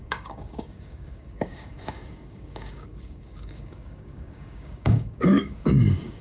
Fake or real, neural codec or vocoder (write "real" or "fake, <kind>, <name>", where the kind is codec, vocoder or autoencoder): fake, codec, DAC